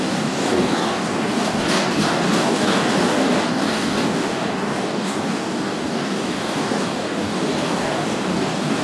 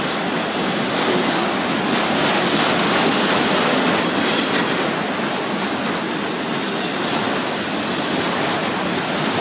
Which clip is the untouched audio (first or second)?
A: second